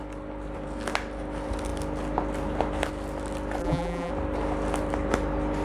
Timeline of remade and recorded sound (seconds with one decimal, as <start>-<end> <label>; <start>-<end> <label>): 0.0-3.6 recorded; 3.6-4.1 remade; 4.1-5.6 recorded